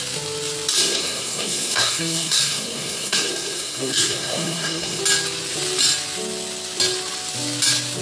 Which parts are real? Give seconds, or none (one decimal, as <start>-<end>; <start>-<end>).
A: 0.0-0.7; 5.0-8.0